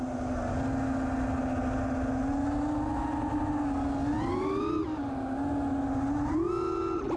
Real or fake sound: real